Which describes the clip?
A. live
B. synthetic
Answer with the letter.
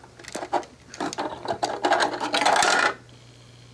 A